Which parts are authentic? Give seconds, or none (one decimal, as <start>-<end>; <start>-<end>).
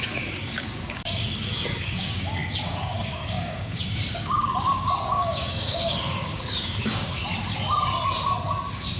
7.2-9.0